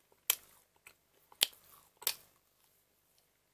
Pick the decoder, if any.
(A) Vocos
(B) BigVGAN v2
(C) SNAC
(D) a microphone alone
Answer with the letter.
D